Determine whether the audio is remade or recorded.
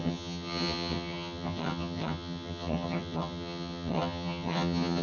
remade